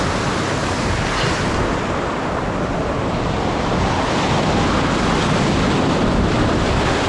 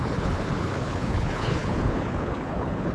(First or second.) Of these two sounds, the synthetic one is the second